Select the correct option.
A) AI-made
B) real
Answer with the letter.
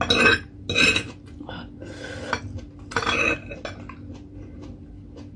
B